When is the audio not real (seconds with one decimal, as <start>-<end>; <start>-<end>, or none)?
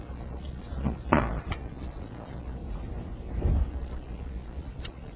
0.0-2.6; 3.7-5.2